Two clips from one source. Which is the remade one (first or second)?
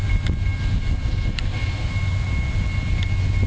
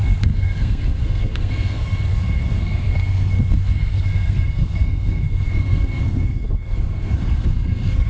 second